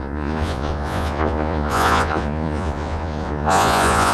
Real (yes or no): no